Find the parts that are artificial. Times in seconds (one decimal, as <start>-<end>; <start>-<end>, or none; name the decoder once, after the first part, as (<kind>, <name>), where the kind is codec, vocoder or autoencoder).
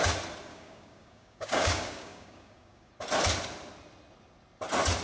0.5-2.9 (codec, DAC)